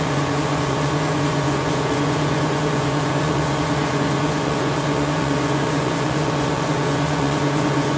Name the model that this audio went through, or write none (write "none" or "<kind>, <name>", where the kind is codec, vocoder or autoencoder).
vocoder, Vocos